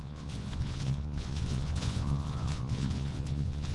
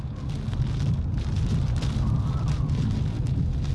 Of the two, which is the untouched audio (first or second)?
second